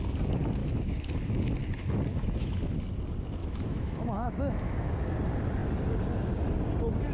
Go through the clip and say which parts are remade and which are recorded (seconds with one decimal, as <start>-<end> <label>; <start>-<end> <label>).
0.0-0.6 recorded; 0.6-1.2 remade; 1.2-2.1 recorded; 2.1-2.6 remade; 2.6-3.4 recorded; 3.4-4.9 remade; 4.9-7.1 recorded